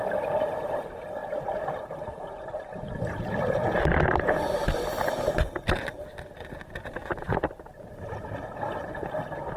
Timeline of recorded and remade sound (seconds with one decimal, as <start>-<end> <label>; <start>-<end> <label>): 0.0-1.2 remade; 1.2-5.3 recorded; 5.3-9.6 remade